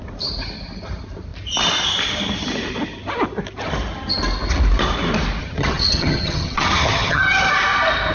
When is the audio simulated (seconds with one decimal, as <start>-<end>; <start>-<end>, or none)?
5.4-7.4